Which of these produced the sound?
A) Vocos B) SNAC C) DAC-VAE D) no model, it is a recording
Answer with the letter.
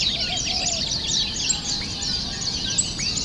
D